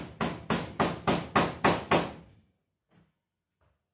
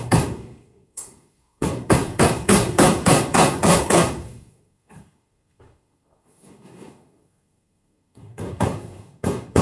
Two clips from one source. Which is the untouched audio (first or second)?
first